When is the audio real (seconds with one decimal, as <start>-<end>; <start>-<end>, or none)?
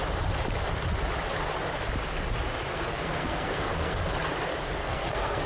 0.0-2.7; 4.0-4.8